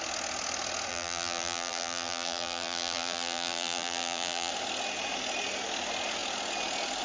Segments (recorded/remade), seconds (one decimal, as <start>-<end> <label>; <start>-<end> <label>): 0.0-0.9 recorded; 0.9-4.5 remade; 4.5-7.0 recorded